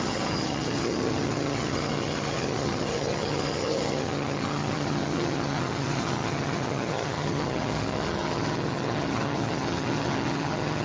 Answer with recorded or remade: remade